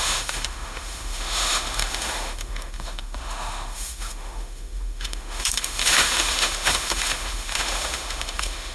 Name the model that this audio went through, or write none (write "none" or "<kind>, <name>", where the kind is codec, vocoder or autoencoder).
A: autoencoder, DAC-VAE